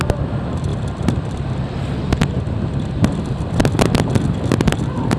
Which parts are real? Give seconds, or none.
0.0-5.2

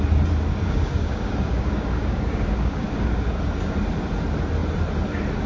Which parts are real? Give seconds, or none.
0.0-0.5; 3.4-5.5

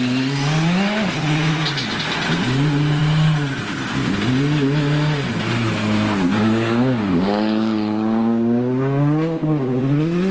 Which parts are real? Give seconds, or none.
0.0-6.3; 9.8-10.3